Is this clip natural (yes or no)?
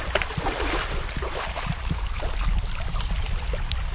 no